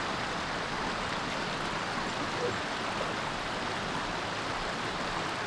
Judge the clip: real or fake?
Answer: real